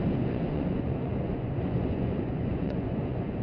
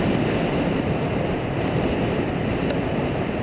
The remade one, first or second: first